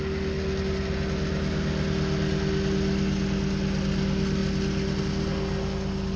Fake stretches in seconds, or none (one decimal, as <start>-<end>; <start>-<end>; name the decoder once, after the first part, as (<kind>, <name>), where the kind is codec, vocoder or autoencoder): none